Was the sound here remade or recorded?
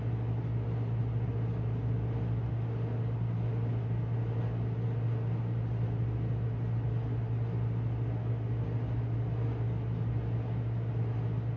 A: recorded